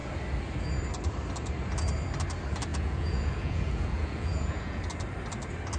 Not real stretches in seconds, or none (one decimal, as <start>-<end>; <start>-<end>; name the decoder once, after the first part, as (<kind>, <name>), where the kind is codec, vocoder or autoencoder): 2.7-4.8 (vocoder, Vocos)